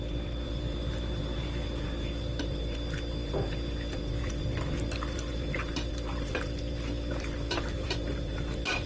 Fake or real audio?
real